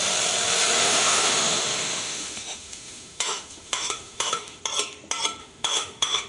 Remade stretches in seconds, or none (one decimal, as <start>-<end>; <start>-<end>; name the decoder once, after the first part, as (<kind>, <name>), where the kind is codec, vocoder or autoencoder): 0.8-4.6 (autoencoder, DAC-VAE); 5.4-6.3